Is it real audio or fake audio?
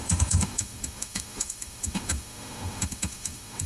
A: fake